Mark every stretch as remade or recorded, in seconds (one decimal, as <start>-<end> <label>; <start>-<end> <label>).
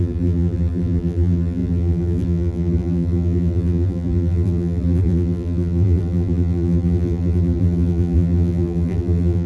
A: 0.0-9.5 remade